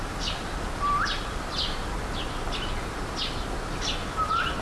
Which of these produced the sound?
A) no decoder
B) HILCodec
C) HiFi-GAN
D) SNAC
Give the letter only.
A